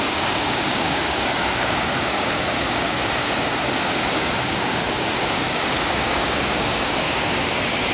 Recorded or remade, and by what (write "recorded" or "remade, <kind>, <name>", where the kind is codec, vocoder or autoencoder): remade, codec, DAC